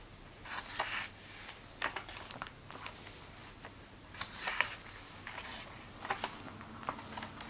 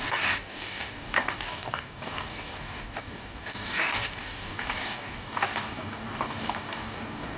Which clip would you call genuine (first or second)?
first